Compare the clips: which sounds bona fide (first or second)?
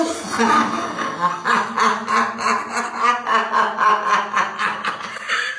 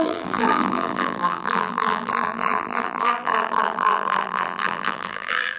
first